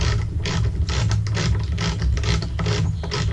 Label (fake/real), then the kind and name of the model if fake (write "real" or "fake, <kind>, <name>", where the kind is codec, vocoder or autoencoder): real